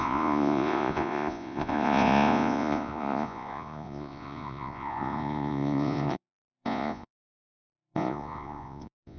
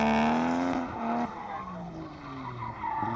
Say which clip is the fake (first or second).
first